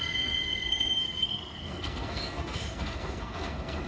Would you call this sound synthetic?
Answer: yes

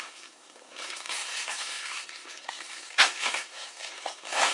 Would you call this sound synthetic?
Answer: yes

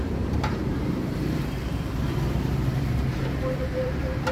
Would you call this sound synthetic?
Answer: yes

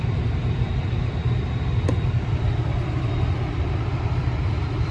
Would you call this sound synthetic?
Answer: yes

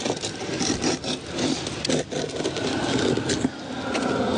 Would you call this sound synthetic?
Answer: no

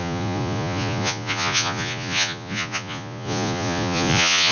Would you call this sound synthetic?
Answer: yes